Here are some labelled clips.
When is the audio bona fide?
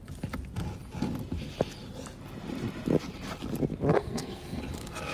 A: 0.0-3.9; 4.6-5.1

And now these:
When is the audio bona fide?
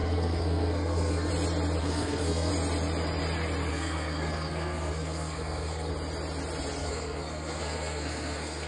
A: 1.3-1.8; 2.5-3.7; 5.9-6.8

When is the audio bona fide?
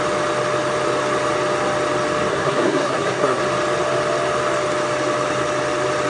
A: 0.0-2.3; 3.4-6.1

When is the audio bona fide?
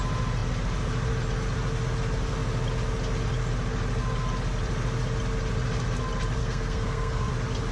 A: 0.0-6.4; 7.3-7.7